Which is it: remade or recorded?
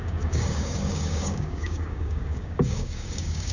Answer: remade